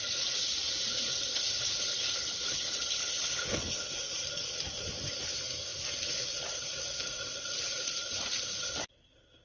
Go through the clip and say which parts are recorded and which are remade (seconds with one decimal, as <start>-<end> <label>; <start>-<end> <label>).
0.0-1.3 recorded; 1.3-3.9 remade; 3.9-9.4 recorded